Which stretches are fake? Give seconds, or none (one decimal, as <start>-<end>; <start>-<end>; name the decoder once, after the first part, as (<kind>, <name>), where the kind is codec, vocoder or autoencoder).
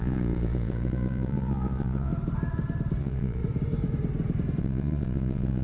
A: 0.0-2.1 (vocoder, Vocos); 3.0-3.4; 4.6-5.6